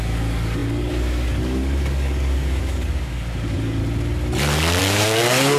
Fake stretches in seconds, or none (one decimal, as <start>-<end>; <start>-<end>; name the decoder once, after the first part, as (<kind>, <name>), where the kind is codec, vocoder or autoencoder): 0.0-3.8 (codec, DAC); 4.8-5.6